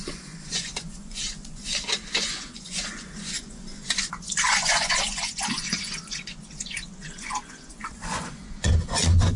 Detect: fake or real fake